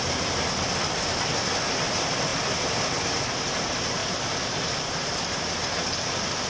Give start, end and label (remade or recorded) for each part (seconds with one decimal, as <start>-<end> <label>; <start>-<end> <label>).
0.0-4.0 recorded; 4.0-5.4 remade; 5.4-6.5 recorded